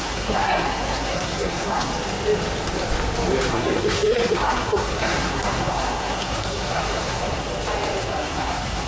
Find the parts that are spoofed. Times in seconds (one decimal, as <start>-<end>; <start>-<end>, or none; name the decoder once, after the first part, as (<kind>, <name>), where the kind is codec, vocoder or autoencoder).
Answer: 0.0-1.9 (codec, SNAC); 3.5-7.5; 8.0-8.9